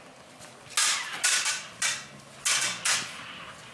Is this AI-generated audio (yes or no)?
no